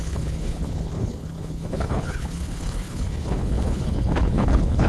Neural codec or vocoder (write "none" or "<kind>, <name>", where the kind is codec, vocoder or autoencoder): codec, HILCodec